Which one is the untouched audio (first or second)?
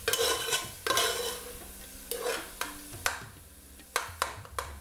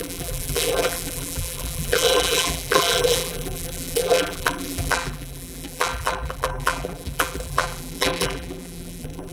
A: first